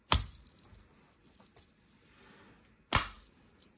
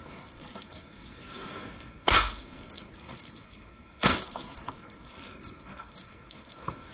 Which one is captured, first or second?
first